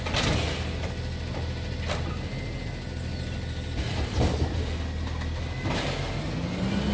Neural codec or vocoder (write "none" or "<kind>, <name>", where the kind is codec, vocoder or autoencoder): none